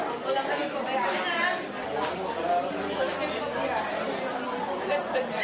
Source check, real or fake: real